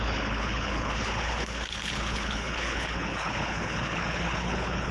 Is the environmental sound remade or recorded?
remade